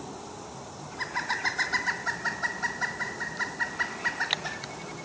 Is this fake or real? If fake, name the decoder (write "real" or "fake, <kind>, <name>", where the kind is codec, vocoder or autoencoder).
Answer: real